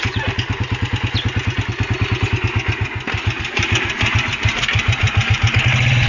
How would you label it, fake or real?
real